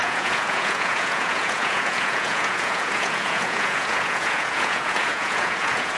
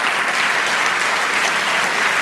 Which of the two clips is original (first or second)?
second